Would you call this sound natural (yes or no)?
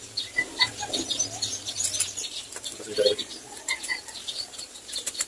yes